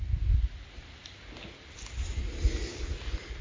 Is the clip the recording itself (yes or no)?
yes